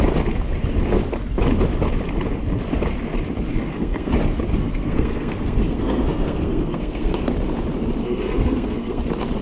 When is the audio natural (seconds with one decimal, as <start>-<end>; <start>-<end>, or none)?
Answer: 0.0-3.5; 4.1-4.5; 7.3-8.0; 9.0-9.4